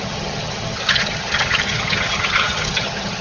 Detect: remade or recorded remade